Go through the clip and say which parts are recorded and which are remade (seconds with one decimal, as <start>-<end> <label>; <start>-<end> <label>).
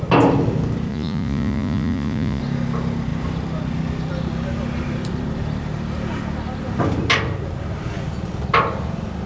0.0-0.9 recorded; 0.9-2.4 remade; 2.4-9.3 recorded